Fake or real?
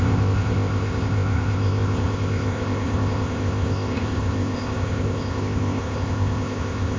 fake